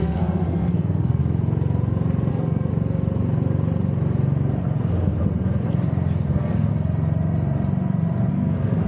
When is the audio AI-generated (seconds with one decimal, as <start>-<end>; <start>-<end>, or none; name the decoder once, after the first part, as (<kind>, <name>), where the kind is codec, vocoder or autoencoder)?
0.0-1.2 (codec, SNAC); 2.3-2.7; 6.3-6.7; 8.3-8.9